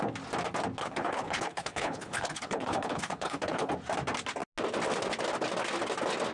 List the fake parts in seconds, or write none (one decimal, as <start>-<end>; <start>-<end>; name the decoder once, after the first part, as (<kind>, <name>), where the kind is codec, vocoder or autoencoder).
0.8-3.7 (codec, HILCodec)